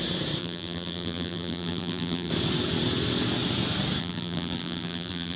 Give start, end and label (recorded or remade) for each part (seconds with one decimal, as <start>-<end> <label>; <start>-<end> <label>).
0.0-0.4 recorded; 0.4-2.3 remade; 2.3-4.0 recorded; 4.0-5.4 remade